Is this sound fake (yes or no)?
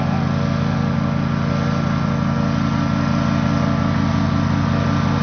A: no